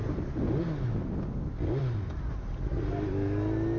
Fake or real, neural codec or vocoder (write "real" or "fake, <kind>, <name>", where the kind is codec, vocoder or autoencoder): real